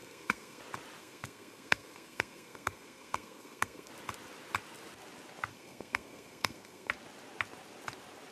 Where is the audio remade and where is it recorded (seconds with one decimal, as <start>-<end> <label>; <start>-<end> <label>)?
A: 0.0-0.6 remade; 0.6-1.0 recorded; 1.0-3.9 remade; 3.9-5.5 recorded; 5.5-6.9 remade; 6.9-8.3 recorded